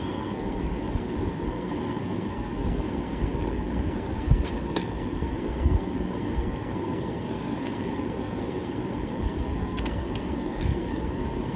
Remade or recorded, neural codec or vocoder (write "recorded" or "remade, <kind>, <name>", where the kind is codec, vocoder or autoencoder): remade, codec, SNAC